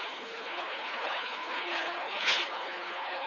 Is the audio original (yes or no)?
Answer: no